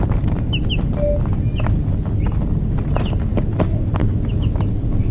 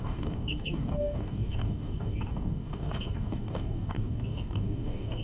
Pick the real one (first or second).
first